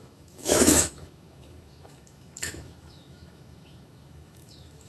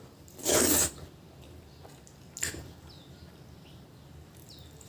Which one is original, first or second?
second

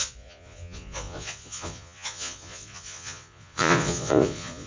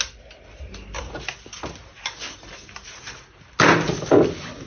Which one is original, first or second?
second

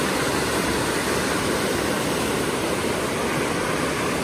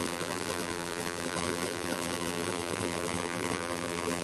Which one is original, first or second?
first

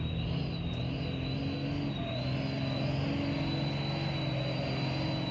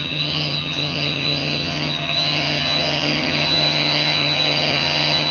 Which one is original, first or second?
first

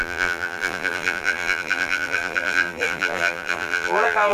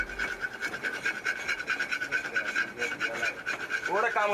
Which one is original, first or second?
second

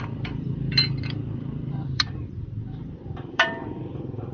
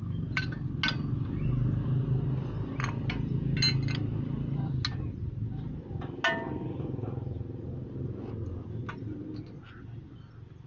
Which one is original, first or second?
second